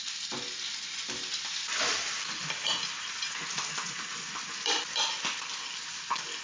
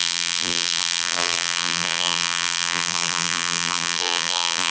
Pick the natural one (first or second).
first